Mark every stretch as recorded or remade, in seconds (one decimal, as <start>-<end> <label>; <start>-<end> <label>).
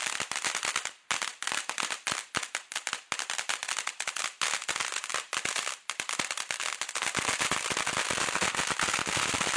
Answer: 0.0-9.6 recorded